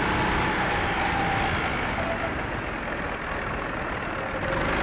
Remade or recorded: recorded